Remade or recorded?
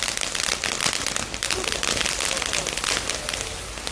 recorded